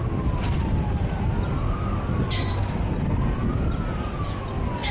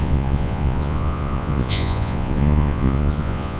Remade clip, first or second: second